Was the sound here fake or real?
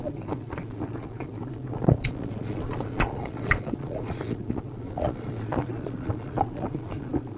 fake